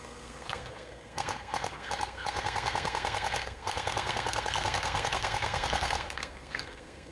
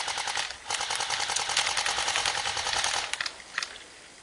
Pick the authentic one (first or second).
second